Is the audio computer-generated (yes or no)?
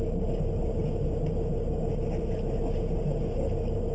no